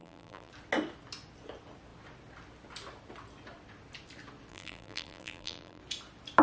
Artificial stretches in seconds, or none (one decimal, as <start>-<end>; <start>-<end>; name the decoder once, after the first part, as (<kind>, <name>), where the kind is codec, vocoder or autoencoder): 0.0-0.5 (vocoder, BigVGAN v2); 4.5-5.8